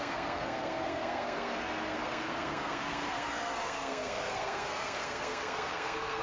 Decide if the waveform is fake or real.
fake